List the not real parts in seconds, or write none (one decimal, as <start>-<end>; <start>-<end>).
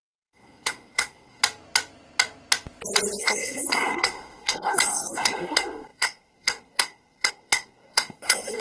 0.0-1.4; 3.2-8.6